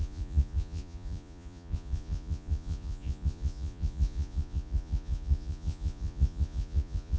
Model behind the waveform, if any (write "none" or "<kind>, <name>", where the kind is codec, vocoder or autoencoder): vocoder, Vocos